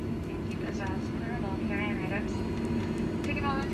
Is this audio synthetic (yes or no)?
no